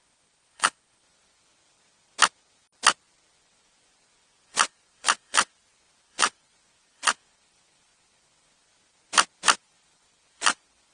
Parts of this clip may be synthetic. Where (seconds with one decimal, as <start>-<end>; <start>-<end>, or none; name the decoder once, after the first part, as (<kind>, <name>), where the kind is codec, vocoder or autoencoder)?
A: 0.0-1.5 (vocoder, Vocos); 3.3-8.7; 9.6-10.9